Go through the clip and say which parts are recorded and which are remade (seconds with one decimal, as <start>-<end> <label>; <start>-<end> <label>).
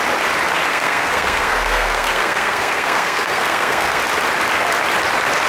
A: 0.0-0.7 recorded; 0.7-4.0 remade; 4.0-5.5 recorded